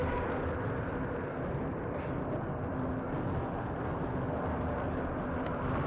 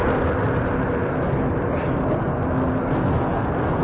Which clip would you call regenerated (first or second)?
first